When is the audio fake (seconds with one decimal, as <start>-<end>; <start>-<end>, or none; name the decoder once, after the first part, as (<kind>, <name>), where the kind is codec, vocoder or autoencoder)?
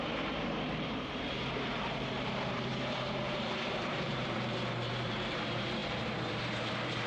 0.0-7.1 (vocoder, BigVGAN v2)